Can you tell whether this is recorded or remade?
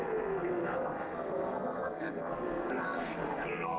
remade